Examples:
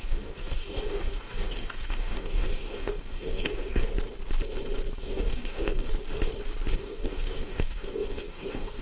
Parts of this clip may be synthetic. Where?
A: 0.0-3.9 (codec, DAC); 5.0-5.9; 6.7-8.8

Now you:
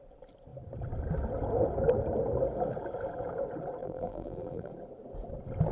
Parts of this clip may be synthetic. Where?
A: 3.8-4.7 (vocoder, BigVGAN v2)